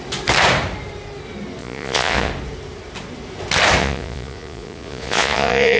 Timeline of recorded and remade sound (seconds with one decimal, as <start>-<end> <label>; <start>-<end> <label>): 0.0-1.6 recorded; 1.6-2.3 remade; 2.3-3.8 recorded; 3.8-5.8 remade